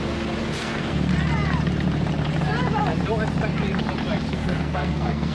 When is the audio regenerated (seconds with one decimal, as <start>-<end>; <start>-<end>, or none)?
0.6-1.1; 4.3-5.3